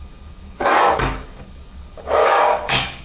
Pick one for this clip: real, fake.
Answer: fake